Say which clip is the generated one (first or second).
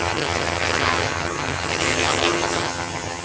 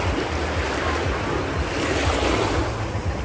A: first